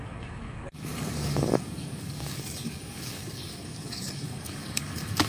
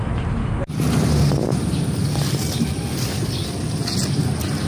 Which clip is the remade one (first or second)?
first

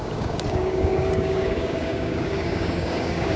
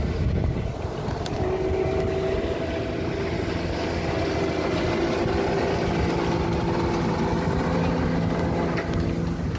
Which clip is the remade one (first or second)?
first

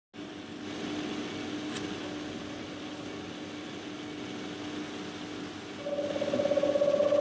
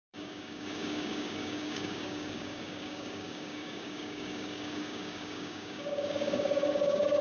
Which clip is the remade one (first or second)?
second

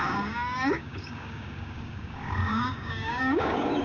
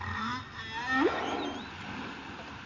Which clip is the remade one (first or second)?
first